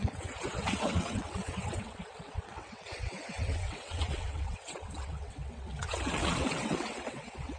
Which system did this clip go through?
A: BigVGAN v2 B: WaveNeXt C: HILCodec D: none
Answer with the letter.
B